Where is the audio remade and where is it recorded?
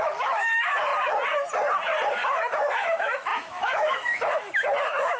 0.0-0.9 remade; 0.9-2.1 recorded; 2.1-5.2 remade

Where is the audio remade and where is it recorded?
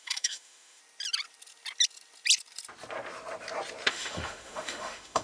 0.0-0.8 remade; 0.8-3.9 recorded; 3.9-5.2 remade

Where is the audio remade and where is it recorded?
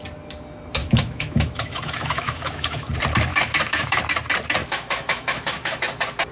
0.0-0.8 recorded; 0.8-2.9 remade; 2.9-3.3 recorded; 3.3-4.0 remade; 4.0-4.6 recorded; 4.6-5.8 remade; 5.8-6.3 recorded